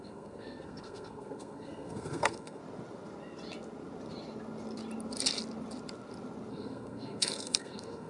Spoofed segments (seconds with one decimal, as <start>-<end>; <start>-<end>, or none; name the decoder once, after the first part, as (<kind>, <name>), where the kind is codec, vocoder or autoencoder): 0.0-2.6 (codec, SNAC); 6.5-8.1